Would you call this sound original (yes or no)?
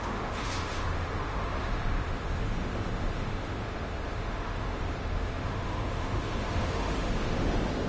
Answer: no